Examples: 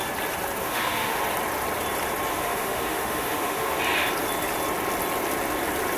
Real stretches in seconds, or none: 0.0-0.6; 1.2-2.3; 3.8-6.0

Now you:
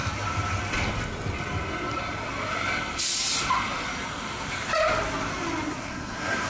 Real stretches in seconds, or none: 0.0-5.7

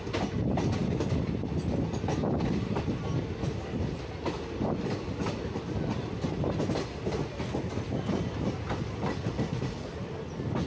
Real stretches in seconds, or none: 0.0-10.7

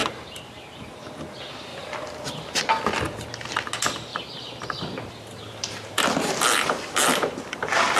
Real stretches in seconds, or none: 0.8-1.7; 2.6-4.1; 6.3-8.0

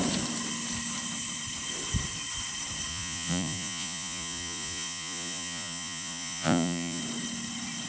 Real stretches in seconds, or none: 0.0-2.9; 7.0-7.9

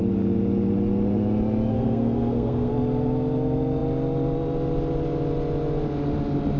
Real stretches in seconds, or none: 0.0-1.7; 2.7-6.6